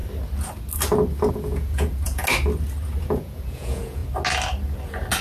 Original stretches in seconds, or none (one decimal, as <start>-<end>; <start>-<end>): 0.0-1.3; 2.2-3.0; 4.0-5.2